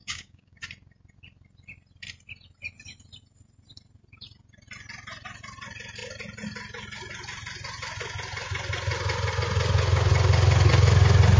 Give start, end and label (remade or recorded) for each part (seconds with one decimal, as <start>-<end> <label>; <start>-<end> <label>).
0.0-0.6 remade; 0.6-11.4 recorded